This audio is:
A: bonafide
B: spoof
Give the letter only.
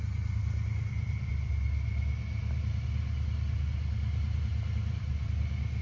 A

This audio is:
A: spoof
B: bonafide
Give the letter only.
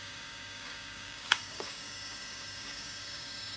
A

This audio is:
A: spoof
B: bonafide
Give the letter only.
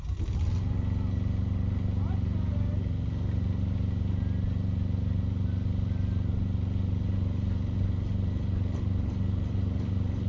B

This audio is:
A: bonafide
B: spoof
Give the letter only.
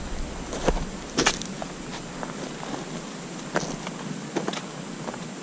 A